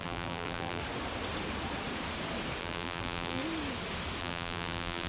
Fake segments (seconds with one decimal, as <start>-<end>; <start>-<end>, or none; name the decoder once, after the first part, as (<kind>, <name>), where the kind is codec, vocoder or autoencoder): 0.0-0.8 (vocoder, BigVGAN v2); 2.6-3.4; 4.2-5.1